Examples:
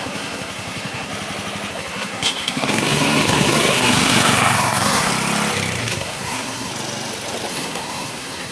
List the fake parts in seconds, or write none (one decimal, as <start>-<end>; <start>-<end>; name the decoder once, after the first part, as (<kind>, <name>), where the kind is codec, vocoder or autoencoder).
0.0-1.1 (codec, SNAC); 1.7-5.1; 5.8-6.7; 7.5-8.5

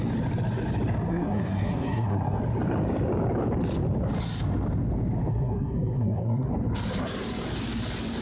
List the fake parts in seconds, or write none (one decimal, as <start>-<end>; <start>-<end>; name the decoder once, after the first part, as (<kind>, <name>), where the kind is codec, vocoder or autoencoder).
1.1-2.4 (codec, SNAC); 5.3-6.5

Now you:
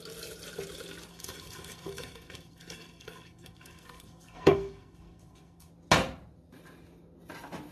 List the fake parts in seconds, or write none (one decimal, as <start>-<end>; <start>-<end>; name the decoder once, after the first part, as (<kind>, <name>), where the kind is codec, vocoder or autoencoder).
1.1-5.7 (codec, SNAC)